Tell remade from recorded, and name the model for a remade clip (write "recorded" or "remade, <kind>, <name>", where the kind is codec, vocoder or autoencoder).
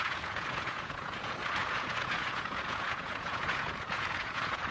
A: remade, vocoder, Vocos